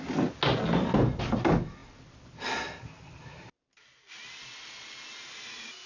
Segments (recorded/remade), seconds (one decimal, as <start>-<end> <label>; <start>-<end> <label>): 0.0-5.9 recorded